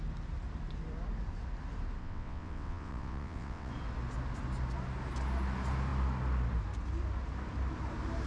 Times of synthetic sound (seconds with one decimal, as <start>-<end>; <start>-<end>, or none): 2.0-3.7